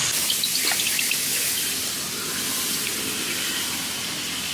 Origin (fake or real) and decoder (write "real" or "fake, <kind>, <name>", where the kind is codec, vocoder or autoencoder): real